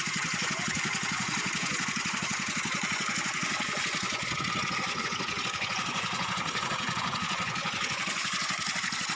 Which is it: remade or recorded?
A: remade